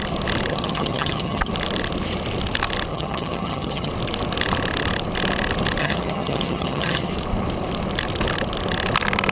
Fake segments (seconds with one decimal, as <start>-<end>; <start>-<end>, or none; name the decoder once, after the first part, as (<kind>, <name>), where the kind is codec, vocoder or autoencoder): 0.5-1.5 (vocoder, HiFi-GAN); 2.9-3.9; 5.8-7.1